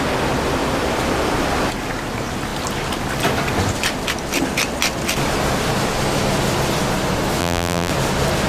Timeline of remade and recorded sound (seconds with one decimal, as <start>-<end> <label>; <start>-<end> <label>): 0.0-7.4 recorded; 7.4-7.9 remade; 7.9-8.5 recorded